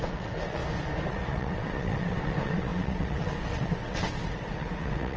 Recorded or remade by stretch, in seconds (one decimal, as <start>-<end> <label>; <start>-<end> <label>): 0.0-0.6 remade; 0.6-1.1 recorded; 1.1-5.2 remade